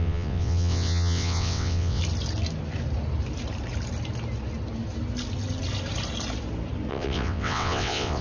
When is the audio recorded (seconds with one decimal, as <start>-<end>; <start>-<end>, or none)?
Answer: 2.0-6.9